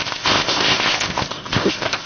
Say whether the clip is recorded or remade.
remade